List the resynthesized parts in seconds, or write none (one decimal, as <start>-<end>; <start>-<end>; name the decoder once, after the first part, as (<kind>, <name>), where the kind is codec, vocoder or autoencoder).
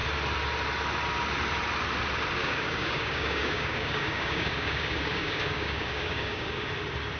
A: 2.4-6.7 (codec, DAC)